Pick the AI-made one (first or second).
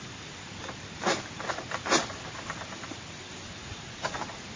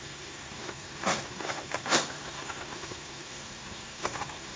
second